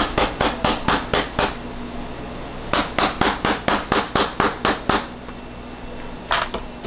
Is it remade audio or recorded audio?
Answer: recorded